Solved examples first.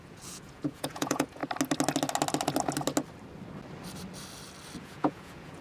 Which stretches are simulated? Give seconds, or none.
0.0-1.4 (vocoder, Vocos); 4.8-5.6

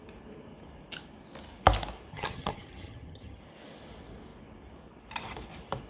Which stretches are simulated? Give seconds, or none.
2.1-3.4 (vocoder, HiFi-GAN)

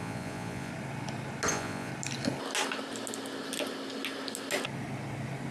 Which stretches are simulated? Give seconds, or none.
0.0-0.7 (vocoder, Vocos); 1.5-1.9

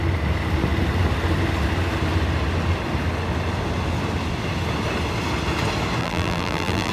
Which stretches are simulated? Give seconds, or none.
6.0-6.9 (vocoder, BigVGAN v2)

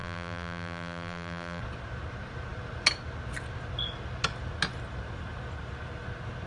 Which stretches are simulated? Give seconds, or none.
0.0-1.6 (vocoder, BigVGAN v2)

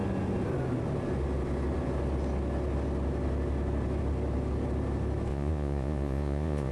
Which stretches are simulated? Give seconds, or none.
5.3-6.7 (vocoder, Vocos)